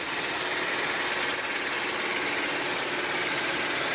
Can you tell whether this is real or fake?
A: real